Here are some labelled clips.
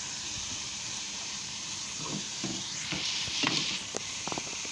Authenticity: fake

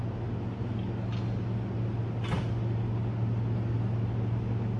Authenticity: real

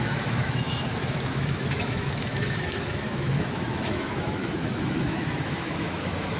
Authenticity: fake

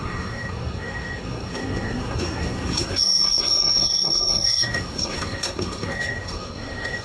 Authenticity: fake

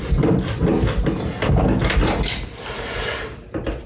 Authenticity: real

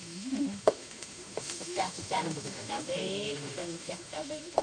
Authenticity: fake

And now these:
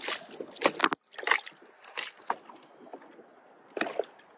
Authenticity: real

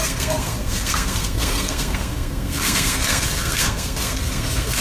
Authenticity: fake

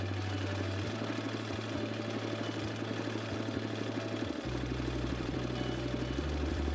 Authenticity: fake